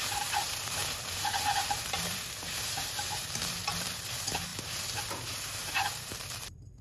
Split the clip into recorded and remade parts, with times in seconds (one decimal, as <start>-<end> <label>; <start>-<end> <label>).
0.0-6.8 remade